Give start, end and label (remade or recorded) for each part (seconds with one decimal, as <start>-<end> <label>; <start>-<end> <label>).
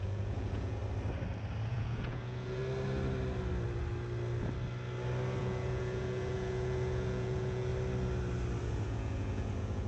0.0-0.8 remade; 0.8-1.7 recorded; 1.7-2.6 remade; 2.6-5.4 recorded; 5.4-7.7 remade; 7.7-8.6 recorded; 8.6-9.9 remade